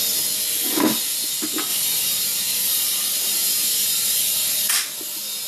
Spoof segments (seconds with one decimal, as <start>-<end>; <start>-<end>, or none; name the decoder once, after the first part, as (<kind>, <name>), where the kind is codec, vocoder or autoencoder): 1.7-4.7 (vocoder, BigVGAN v2)